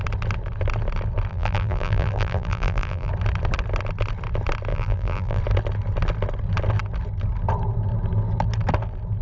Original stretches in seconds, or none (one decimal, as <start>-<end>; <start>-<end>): 0.0-1.3; 3.1-4.7; 5.4-9.2